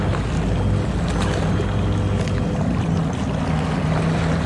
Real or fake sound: real